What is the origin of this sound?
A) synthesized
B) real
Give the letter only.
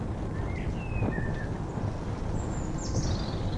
B